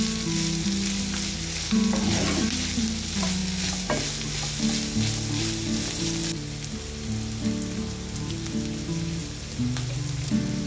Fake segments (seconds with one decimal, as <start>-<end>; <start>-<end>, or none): 9.2-10.7